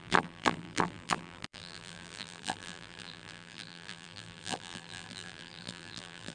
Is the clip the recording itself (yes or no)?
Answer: no